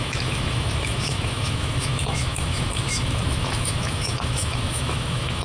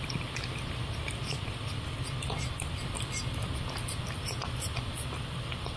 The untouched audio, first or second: second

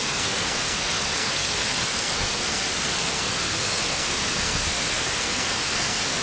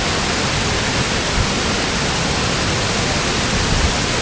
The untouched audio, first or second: second